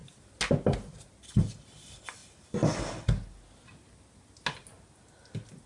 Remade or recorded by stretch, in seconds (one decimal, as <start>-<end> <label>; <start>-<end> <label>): 0.0-5.7 recorded